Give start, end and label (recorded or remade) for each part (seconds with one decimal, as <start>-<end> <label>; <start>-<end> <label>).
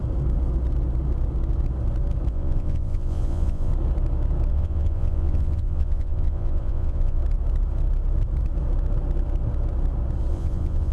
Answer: 0.0-2.3 recorded; 2.3-3.7 remade; 3.7-4.5 recorded; 4.5-7.2 remade; 7.2-10.3 recorded; 10.3-10.9 remade